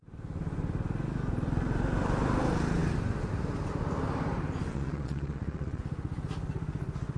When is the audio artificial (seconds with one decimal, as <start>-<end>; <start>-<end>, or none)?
4.7-5.8